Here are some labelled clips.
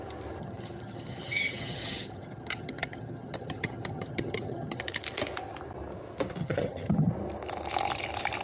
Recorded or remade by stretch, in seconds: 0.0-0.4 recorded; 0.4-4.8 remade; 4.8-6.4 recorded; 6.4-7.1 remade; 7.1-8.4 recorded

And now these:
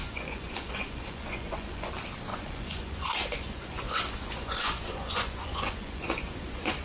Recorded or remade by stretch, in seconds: 0.0-1.9 remade; 1.9-2.3 recorded; 2.3-6.8 remade

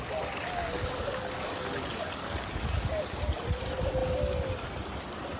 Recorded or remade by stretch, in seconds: 0.0-0.6 recorded; 0.6-3.0 remade; 3.0-5.4 recorded

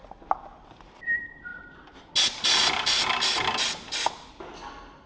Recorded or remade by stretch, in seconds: 0.0-5.1 recorded

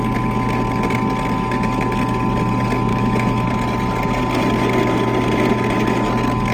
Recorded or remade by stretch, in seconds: 0.0-2.9 recorded; 2.9-3.5 remade; 3.5-6.5 recorded